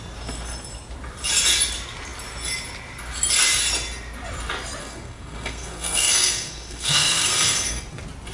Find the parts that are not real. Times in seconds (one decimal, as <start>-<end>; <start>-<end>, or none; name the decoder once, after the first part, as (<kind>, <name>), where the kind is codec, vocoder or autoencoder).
4.8-7.8 (codec, SNAC)